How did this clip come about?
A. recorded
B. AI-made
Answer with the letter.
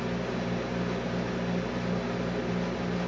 A